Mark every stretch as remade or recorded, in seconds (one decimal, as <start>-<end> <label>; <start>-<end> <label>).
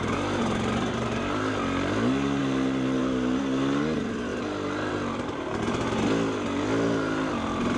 0.0-7.8 recorded